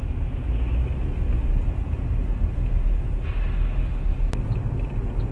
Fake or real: real